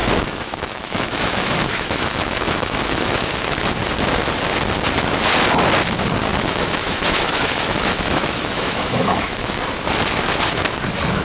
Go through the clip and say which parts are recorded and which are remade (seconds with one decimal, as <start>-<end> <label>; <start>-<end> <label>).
0.0-3.7 remade; 3.7-6.3 recorded; 6.3-9.5 remade; 9.5-11.2 recorded